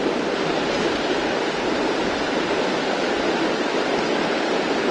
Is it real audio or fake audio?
real